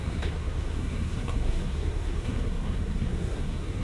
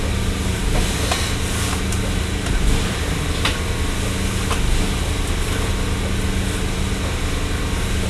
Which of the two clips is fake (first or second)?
first